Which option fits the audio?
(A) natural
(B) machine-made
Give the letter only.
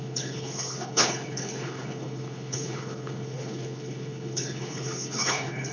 B